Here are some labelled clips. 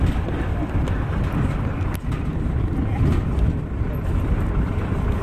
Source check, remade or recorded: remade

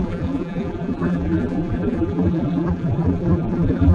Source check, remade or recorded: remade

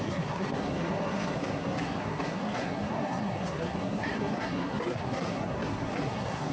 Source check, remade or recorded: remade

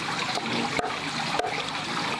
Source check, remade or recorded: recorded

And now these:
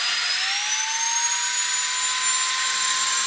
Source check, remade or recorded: recorded